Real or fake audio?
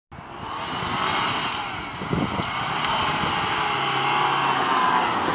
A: real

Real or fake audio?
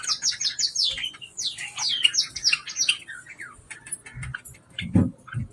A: real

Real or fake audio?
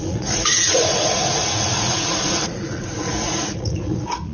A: fake